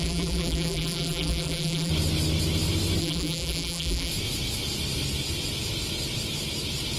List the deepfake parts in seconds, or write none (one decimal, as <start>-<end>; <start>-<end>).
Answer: 0.0-1.9; 3.0-4.1